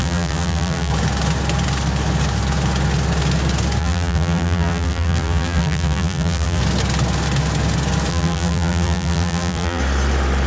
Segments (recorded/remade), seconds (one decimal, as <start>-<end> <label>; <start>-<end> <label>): 0.0-0.9 remade; 0.9-3.8 recorded; 3.8-6.6 remade; 6.6-8.1 recorded; 8.1-9.8 remade; 9.8-10.5 recorded